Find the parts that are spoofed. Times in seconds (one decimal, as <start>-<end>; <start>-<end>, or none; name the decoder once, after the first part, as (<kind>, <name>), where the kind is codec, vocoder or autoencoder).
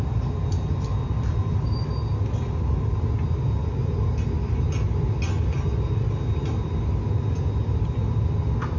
none